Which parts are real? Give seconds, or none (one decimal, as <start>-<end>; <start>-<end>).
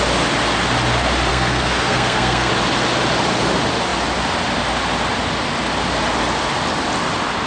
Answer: 0.0-1.3; 2.5-7.5